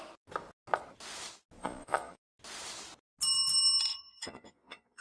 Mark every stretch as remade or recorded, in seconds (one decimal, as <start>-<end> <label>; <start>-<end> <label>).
0.0-1.6 recorded; 1.6-2.2 remade; 2.2-3.9 recorded; 3.9-5.0 remade